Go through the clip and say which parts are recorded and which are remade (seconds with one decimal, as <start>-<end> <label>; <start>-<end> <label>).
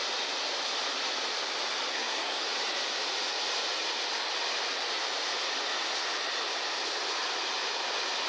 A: 0.0-1.9 recorded; 1.9-2.5 remade; 2.5-8.3 recorded